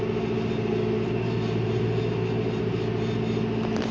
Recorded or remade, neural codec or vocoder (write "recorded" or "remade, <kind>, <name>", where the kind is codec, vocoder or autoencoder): recorded